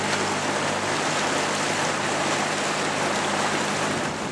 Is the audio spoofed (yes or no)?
no